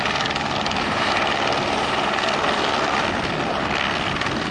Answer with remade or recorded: recorded